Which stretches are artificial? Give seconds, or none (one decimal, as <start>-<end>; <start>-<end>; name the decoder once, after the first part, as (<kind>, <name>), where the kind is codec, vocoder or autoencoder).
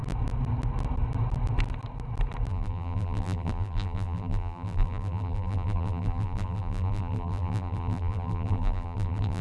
2.5-9.4 (vocoder, BigVGAN v2)